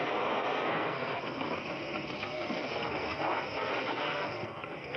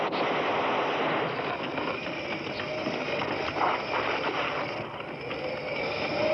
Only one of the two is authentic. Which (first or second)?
second